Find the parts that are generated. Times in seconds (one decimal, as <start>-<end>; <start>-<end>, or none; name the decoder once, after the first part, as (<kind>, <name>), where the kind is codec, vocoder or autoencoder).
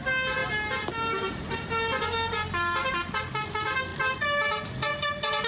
none